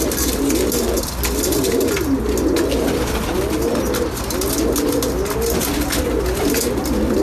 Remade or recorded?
recorded